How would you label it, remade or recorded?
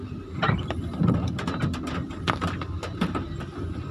recorded